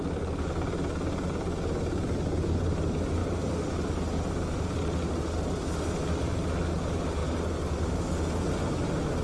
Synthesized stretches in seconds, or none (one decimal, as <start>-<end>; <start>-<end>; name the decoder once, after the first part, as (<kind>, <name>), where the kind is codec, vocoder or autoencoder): none